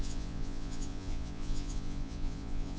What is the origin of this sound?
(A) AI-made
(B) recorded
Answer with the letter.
A